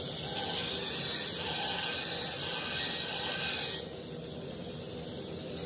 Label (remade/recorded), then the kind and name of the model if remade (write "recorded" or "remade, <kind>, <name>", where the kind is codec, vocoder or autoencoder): recorded